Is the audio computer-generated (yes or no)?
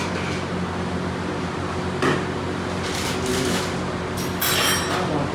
no